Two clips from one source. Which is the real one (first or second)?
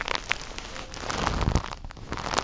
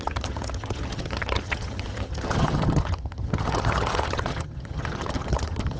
first